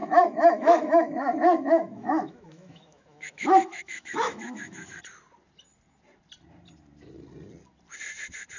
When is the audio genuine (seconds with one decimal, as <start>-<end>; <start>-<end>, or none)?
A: 5.0-8.6